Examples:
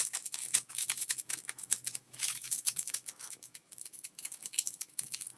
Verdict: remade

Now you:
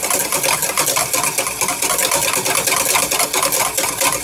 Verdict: recorded